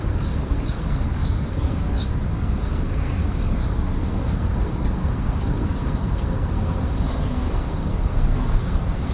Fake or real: fake